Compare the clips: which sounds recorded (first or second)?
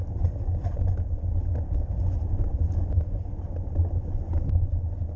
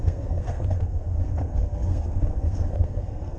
first